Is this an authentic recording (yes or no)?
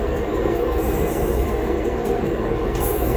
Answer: no